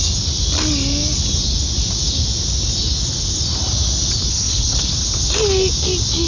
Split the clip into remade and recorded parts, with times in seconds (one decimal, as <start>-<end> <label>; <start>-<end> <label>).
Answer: 0.0-4.3 recorded; 4.3-4.9 remade; 4.9-6.3 recorded